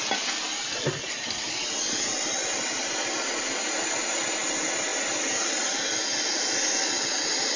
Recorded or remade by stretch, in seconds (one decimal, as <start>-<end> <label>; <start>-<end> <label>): 0.0-7.6 recorded